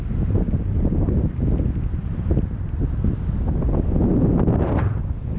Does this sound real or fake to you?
real